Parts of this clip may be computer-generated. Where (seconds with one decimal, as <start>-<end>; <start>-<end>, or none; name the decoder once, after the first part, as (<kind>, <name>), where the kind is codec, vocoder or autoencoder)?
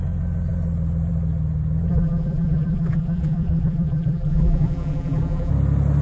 1.9-5.5 (vocoder, BigVGAN v2)